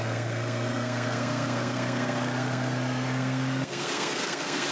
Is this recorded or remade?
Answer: remade